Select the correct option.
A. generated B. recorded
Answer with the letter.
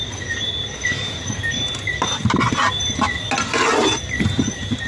B